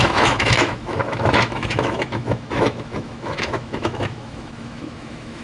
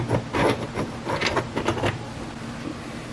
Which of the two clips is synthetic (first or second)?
first